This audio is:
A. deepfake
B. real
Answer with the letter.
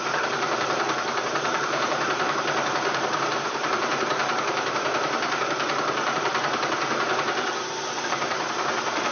A